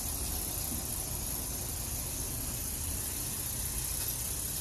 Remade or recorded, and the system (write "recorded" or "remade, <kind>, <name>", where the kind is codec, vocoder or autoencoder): recorded